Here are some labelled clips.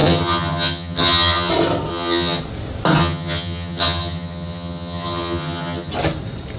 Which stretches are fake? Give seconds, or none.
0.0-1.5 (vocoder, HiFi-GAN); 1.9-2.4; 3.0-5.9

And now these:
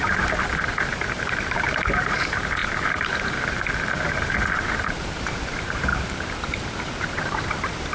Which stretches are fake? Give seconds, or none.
0.0-5.9 (vocoder, BigVGAN v2); 7.0-7.9

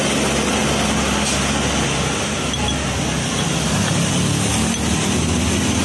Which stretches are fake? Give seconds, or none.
none

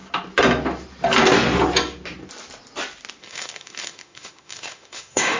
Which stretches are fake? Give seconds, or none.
3.2-5.4 (autoencoder, DAC-VAE)